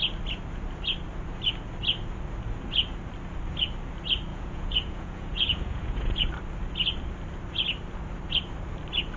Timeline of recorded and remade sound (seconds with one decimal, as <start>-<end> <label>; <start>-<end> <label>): 0.0-4.3 recorded; 4.3-6.3 remade; 6.3-9.2 recorded